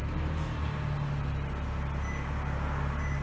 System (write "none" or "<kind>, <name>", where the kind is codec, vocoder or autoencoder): none